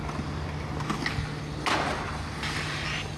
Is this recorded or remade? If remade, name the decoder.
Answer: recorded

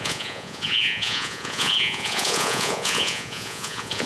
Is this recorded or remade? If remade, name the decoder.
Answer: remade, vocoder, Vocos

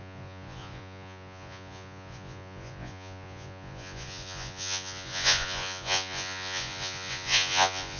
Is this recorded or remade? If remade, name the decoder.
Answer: remade, vocoder, Vocos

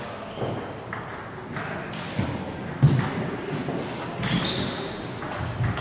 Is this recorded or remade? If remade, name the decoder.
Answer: recorded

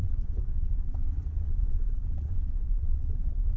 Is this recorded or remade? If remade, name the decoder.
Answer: remade, vocoder, Vocos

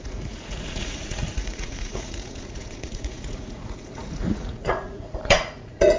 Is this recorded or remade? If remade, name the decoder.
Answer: remade, vocoder, Vocos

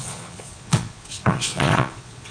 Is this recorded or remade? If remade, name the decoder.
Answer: remade, vocoder, Vocos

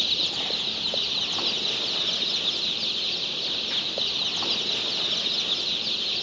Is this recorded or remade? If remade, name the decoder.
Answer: recorded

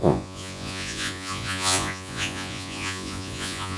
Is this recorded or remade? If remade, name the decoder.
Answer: remade, vocoder, Vocos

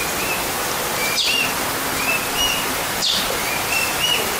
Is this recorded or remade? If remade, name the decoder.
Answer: recorded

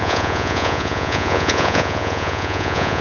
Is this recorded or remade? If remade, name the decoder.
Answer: remade, vocoder, Vocos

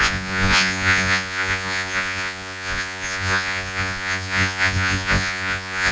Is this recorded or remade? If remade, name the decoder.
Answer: remade, vocoder, Vocos